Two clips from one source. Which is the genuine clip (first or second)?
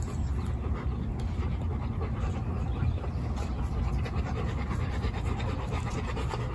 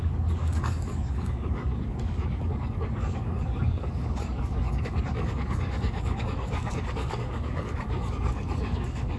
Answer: first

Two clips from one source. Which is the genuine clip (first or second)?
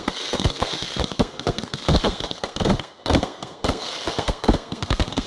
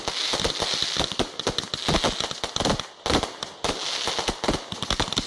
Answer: second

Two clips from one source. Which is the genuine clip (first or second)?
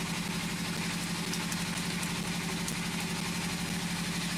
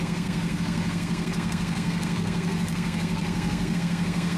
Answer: first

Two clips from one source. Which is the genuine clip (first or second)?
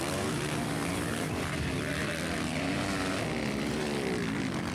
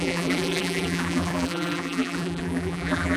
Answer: first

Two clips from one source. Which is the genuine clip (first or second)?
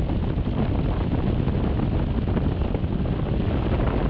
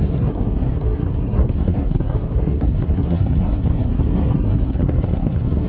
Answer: first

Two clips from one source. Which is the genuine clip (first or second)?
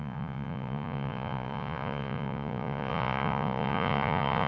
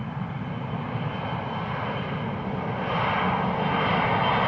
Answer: second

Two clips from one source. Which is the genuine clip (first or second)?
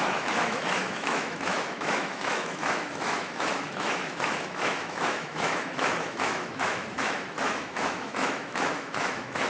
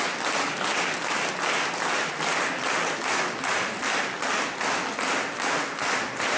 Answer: second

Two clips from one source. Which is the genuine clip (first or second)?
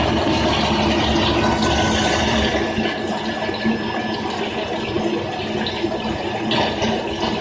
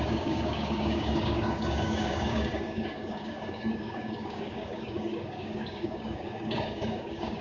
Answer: first